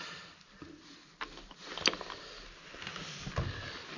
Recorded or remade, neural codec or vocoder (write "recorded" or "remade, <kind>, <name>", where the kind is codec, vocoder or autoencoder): recorded